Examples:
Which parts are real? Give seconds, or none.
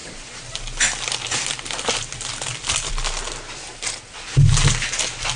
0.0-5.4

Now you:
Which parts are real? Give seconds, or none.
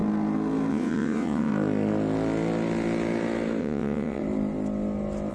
0.0-0.7; 1.5-3.6; 4.2-5.3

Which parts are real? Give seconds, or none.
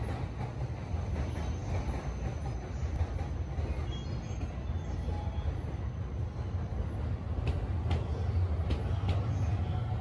0.0-10.0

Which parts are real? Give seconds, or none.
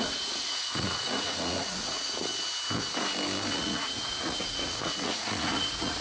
2.3-3.5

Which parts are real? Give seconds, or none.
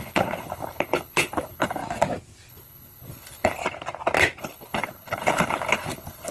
1.8-2.5; 3.6-4.4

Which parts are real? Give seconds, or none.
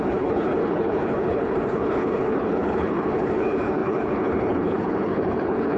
none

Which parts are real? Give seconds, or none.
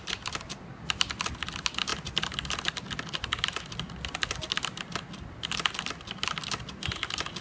0.0-7.4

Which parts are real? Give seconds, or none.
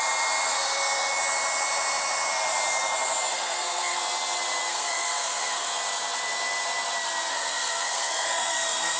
0.0-3.3; 4.0-4.7; 5.7-7.3